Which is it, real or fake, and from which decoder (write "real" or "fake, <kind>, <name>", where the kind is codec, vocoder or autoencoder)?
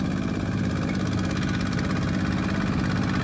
real